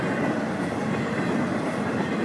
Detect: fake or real real